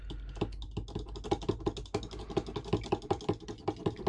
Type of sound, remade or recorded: recorded